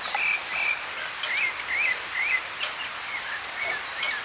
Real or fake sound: real